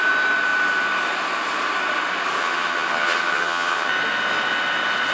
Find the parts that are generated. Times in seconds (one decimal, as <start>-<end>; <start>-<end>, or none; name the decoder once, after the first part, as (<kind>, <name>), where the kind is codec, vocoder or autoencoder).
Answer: 2.4-3.9 (vocoder, HiFi-GAN)